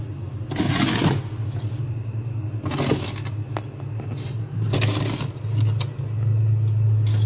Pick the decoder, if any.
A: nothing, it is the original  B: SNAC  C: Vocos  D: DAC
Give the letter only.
A